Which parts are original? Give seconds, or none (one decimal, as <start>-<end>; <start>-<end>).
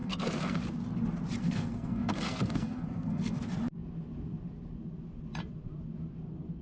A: 0.6-1.4; 3.4-6.6